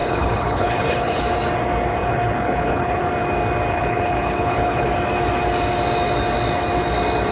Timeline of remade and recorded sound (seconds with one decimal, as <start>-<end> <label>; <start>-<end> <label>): 0.0-1.2 remade; 1.2-2.0 recorded; 2.0-3.1 remade; 3.1-3.7 recorded; 3.7-4.9 remade; 4.9-7.3 recorded